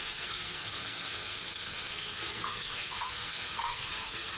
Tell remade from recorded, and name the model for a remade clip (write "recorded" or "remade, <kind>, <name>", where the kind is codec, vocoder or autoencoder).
remade, codec, SNAC